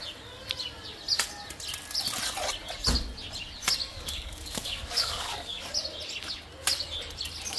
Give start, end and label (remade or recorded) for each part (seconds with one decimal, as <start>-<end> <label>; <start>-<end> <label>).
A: 0.0-3.9 recorded; 3.9-5.7 remade; 5.7-7.6 recorded